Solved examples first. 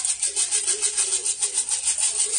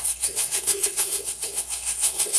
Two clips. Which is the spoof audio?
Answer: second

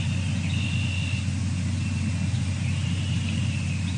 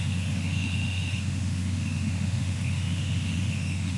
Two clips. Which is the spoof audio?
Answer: second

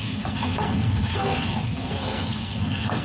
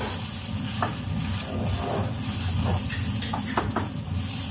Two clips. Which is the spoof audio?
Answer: first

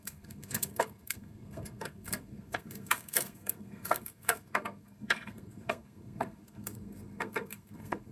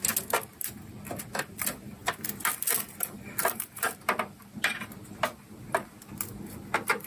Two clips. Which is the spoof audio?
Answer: first